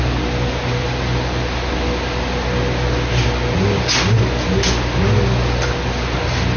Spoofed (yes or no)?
no